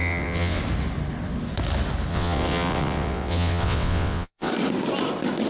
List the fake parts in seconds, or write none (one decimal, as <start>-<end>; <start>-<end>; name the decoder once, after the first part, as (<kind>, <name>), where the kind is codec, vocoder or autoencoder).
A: 0.0-0.6 (vocoder, WaveNeXt); 2.1-4.5